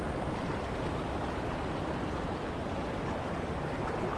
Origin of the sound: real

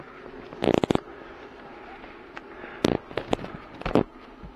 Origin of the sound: real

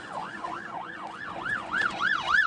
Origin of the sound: fake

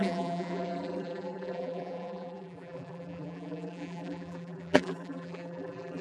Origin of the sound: fake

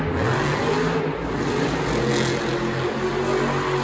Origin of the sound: real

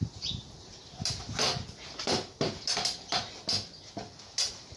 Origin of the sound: real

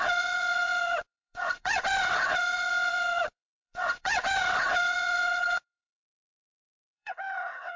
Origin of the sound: fake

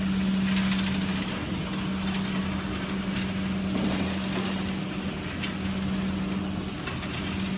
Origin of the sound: real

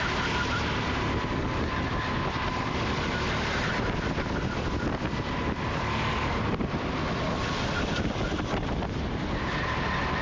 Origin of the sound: real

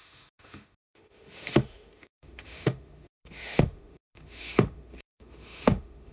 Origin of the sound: fake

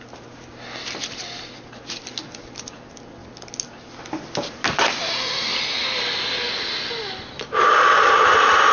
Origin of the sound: real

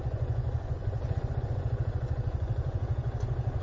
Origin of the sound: fake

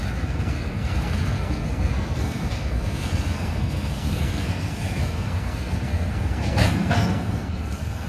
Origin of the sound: fake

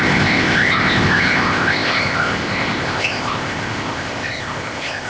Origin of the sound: fake